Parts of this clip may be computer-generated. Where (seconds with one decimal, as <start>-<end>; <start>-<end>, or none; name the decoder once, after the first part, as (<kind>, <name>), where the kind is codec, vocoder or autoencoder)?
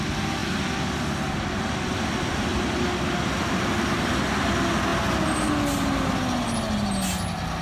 none